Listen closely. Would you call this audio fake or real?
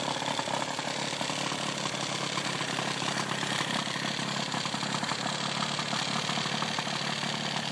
real